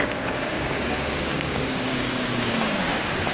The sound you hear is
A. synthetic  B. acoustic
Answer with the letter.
A